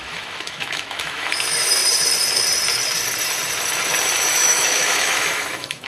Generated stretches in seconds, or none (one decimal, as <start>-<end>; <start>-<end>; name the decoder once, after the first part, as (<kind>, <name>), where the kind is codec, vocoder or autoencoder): 0.0-1.8 (autoencoder, DAC-VAE); 4.3-5.9